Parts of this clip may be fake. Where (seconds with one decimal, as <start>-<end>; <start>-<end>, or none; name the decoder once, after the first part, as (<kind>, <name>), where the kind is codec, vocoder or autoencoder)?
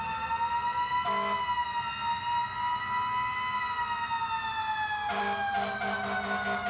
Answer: none